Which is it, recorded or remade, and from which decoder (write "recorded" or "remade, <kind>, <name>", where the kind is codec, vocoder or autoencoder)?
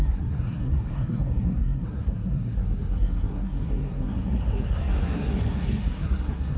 remade, codec, SNAC